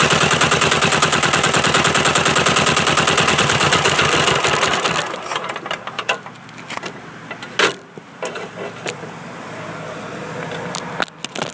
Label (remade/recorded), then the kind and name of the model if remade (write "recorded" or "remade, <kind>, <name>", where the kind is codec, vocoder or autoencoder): recorded